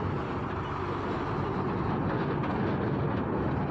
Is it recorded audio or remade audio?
recorded